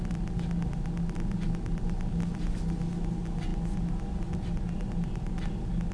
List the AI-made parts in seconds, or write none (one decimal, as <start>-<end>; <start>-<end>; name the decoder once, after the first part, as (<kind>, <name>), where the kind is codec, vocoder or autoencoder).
none